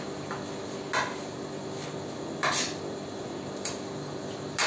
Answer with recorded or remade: recorded